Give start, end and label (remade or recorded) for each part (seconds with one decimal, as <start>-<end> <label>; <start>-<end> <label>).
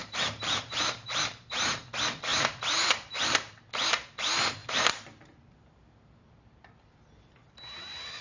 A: 0.0-1.8 remade; 1.8-2.3 recorded; 2.3-2.9 remade; 2.9-4.6 recorded; 4.6-5.7 remade; 5.7-8.2 recorded